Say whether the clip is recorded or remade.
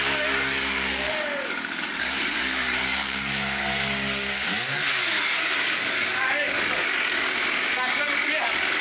remade